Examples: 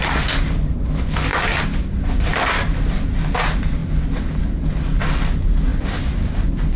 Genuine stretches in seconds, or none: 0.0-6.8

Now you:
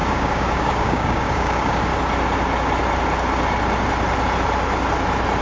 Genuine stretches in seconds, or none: 1.9-5.4

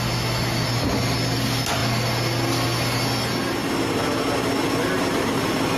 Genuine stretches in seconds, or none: 0.0-5.8

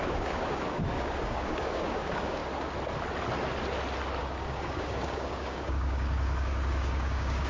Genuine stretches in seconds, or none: 2.4-4.2